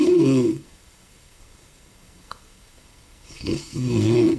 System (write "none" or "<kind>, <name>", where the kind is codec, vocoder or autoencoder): codec, SNAC